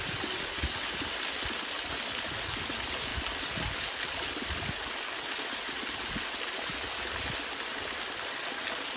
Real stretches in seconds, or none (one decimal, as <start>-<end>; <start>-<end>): 0.0-3.1; 6.1-9.0

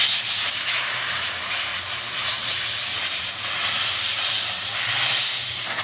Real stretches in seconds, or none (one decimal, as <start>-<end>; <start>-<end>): 0.0-5.8